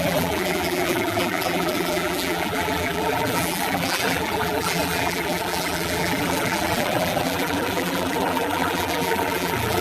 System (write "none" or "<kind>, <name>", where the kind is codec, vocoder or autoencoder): vocoder, BigVGAN v2